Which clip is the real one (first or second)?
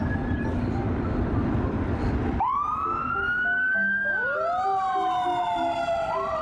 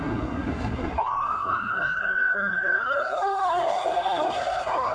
first